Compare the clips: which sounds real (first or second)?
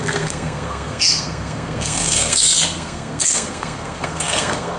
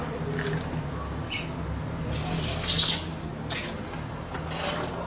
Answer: second